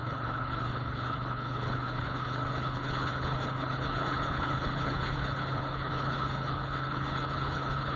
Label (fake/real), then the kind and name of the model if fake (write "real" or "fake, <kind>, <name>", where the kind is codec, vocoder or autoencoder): fake, codec, HILCodec